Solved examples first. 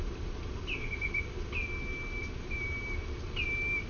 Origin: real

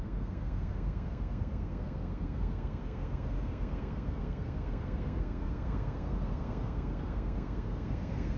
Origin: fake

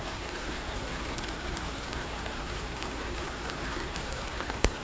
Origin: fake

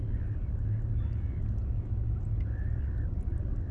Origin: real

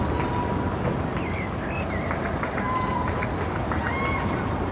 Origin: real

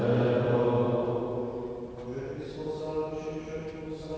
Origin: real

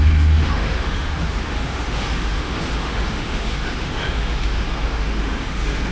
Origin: fake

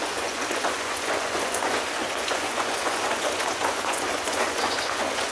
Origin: fake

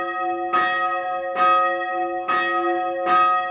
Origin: real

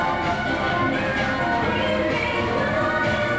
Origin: real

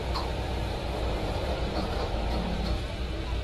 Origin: fake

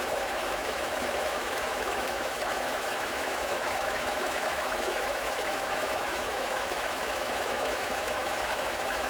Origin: fake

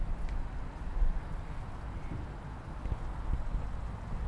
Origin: real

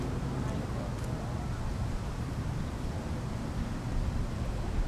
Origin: real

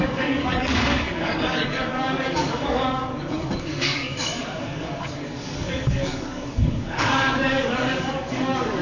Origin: fake